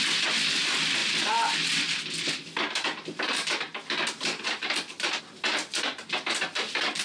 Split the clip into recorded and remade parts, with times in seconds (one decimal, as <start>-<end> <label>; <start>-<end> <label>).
0.0-7.0 recorded